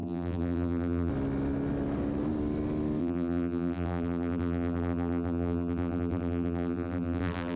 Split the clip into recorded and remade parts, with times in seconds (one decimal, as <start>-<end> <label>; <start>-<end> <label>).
0.0-1.1 remade; 1.1-3.0 recorded; 3.0-7.6 remade